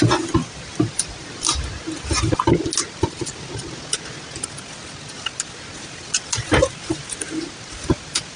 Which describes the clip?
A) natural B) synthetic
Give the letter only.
A